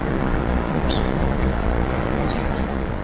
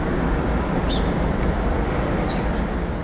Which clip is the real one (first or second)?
second